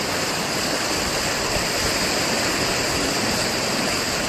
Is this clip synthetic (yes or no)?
no